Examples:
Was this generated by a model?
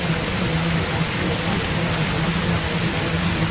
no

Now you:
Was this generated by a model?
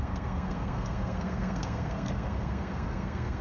yes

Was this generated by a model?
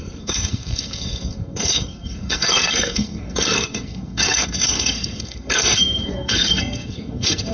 yes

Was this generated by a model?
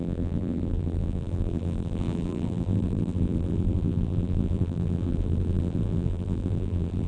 yes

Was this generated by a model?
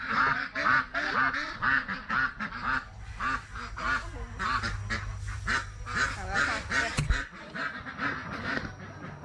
no